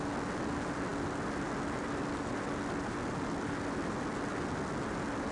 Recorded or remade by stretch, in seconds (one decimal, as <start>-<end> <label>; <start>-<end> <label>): 0.0-5.3 recorded